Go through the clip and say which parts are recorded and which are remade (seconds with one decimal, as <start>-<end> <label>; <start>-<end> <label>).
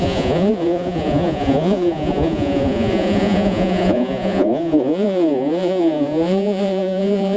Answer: 0.0-7.4 remade